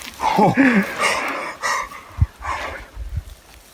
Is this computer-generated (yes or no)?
no